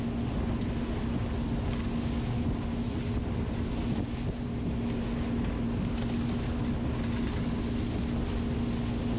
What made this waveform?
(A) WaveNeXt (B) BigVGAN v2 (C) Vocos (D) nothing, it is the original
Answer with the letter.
D